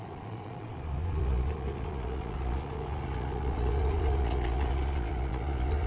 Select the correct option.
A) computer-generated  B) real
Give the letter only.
A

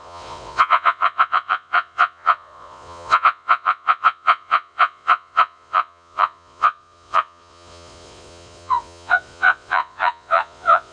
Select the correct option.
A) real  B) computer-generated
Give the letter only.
B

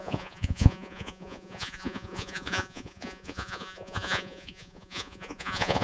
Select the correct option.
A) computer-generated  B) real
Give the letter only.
A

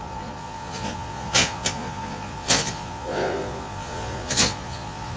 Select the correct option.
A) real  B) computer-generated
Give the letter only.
B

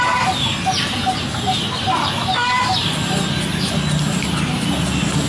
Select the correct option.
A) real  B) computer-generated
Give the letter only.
A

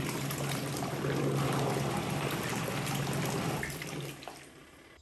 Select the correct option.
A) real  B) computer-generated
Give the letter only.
A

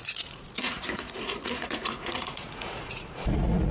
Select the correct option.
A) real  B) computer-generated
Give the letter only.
B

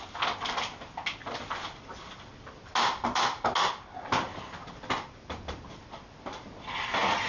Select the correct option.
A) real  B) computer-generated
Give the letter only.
A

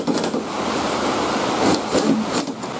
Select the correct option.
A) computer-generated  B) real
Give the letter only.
B